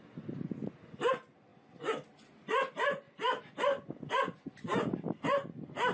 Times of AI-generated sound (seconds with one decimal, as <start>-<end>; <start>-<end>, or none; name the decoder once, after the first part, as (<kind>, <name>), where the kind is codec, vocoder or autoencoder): none